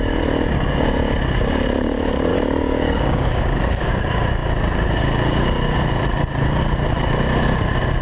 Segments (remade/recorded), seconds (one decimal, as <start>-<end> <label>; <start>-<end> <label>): 0.0-2.3 recorded; 2.3-4.0 remade; 4.0-8.0 recorded